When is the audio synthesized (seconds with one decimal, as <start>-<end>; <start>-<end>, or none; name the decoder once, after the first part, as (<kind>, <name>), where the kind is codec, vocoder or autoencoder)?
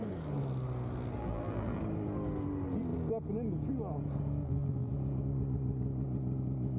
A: 1.2-1.8 (vocoder, BigVGAN v2); 4.4-4.9